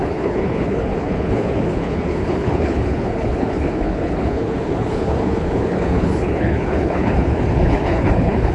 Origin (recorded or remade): remade